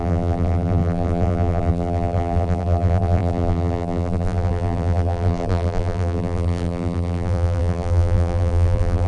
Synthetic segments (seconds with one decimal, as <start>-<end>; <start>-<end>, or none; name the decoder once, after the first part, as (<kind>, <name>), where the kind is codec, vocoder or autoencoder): 0.0-9.1 (vocoder, BigVGAN v2)

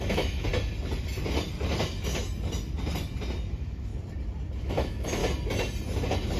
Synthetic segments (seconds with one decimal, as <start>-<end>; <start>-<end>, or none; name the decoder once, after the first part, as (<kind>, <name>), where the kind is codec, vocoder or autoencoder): 0.0-0.5 (autoencoder, DAC-VAE); 3.5-3.9; 4.6-5.2

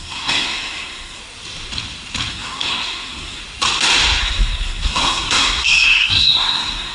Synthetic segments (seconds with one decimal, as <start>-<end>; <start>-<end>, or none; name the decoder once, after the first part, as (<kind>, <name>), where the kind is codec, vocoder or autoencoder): 0.0-1.2 (codec, SNAC); 2.3-3.4; 4.2-6.9

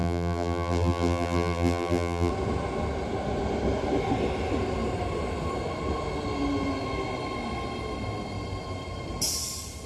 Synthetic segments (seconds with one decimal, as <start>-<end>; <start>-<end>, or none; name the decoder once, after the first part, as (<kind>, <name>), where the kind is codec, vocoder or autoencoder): 0.0-2.3 (vocoder, BigVGAN v2)

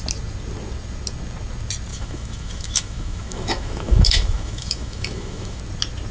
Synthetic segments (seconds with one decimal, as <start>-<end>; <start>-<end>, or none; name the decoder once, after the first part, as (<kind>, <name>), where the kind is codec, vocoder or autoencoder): 1.9-5.6 (autoencoder, DAC-VAE)

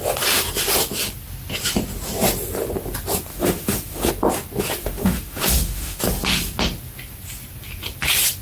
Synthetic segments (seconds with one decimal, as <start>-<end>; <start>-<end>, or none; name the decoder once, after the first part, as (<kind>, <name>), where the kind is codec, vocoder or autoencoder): 3.3-4.1 (autoencoder, DAC-VAE); 4.8-6.0

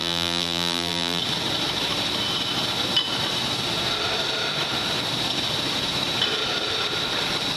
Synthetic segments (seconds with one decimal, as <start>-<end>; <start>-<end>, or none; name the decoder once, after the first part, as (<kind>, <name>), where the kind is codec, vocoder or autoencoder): 0.0-1.2 (vocoder, BigVGAN v2)